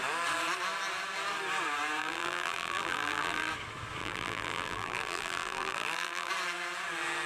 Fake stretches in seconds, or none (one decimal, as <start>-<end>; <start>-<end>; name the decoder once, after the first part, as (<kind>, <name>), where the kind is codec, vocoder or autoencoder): 2.0-3.5 (vocoder, BigVGAN v2); 4.0-6.3